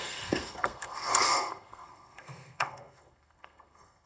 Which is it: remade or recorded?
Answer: remade